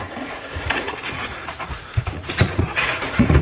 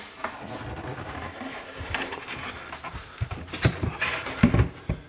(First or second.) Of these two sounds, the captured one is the second